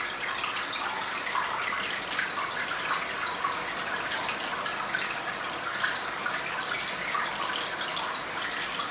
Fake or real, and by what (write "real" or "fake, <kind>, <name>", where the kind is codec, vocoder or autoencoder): real